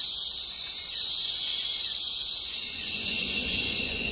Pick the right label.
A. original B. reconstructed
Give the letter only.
B